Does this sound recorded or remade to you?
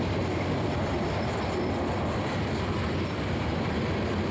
recorded